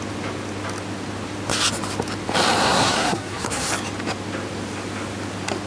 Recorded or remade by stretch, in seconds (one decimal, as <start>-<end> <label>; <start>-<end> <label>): 0.0-2.6 recorded; 2.6-3.7 remade; 3.7-5.7 recorded